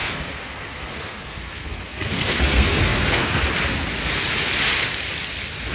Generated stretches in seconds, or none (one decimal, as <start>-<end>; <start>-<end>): 0.0-3.4